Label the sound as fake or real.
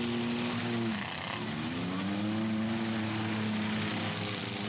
real